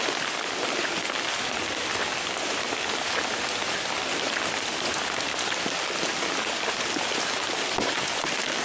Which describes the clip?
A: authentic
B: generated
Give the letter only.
A